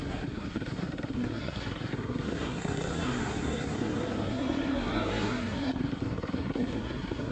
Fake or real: fake